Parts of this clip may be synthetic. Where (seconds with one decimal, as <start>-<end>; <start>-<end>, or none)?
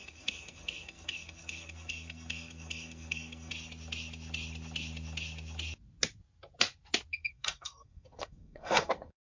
0.0-3.5; 7.3-9.3